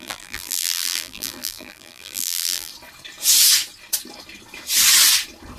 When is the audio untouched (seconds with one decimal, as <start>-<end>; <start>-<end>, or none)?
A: 2.7-5.6